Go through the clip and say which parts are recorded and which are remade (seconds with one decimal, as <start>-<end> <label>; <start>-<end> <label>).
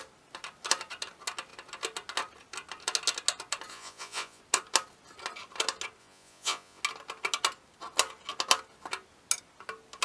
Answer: 0.0-3.7 recorded; 3.7-4.4 remade; 4.4-6.0 recorded; 6.0-6.8 remade; 6.8-10.0 recorded